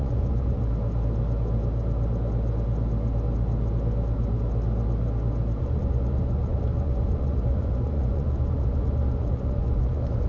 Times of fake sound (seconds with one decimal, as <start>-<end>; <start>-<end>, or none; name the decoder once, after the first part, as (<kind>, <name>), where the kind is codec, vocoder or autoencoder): 0.0-0.6 (vocoder, Vocos); 5.6-10.3